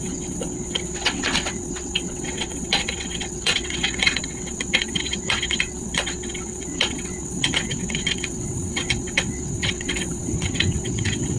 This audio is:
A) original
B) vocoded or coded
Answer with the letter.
B